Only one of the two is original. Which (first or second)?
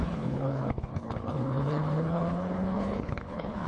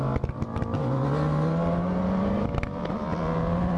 second